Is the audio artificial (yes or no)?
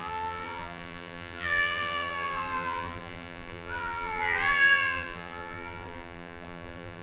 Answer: yes